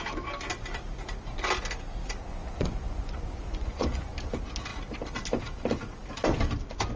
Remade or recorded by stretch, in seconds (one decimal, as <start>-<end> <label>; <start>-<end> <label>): 0.0-2.3 recorded; 2.3-4.1 remade; 4.1-7.0 recorded